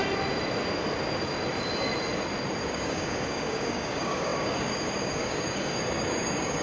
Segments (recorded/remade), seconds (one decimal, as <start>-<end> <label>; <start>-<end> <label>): 0.0-2.7 recorded; 2.7-6.6 remade